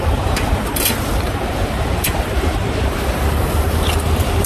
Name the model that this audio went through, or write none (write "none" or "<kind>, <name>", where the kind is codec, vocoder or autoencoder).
vocoder, BigVGAN v2